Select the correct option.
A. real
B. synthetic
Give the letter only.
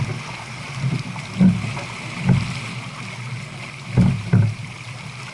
A